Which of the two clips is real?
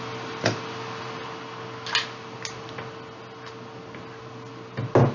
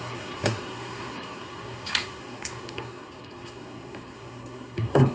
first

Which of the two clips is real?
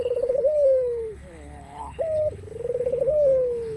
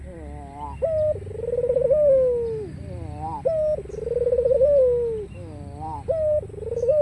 second